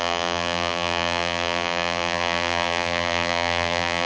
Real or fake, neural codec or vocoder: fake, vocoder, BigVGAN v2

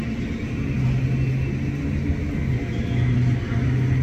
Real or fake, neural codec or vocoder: real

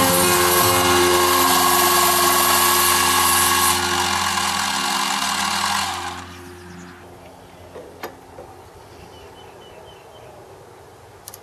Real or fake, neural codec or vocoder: real